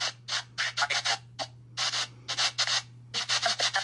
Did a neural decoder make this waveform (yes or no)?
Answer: no